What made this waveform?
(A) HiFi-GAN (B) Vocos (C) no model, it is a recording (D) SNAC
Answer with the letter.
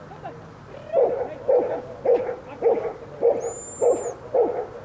C